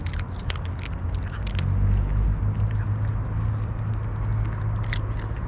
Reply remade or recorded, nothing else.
recorded